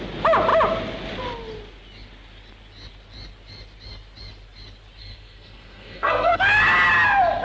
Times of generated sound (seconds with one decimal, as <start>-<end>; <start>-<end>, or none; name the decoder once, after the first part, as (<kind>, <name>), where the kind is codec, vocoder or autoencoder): 5.0-6.4 (codec, SNAC)